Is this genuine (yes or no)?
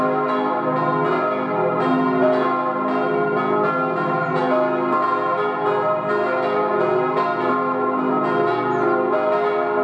yes